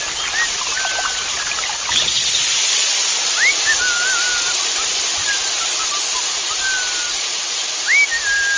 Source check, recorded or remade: recorded